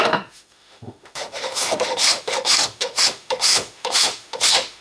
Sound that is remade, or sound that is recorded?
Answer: remade